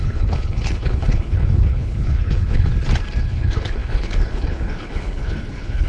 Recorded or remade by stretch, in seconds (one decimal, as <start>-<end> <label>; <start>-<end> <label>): 0.0-2.7 remade; 2.7-3.2 recorded; 3.2-5.9 remade